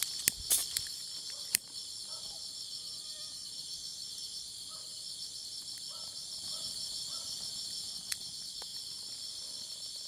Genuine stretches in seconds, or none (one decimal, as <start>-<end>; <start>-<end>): 0.0-0.6; 2.2-3.9; 7.5-10.1